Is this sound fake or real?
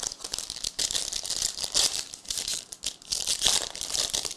real